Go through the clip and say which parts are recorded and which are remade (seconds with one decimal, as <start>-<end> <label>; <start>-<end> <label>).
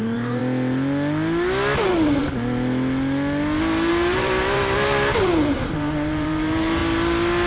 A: 0.0-0.4 remade; 0.4-3.9 recorded; 3.9-6.8 remade; 6.8-7.5 recorded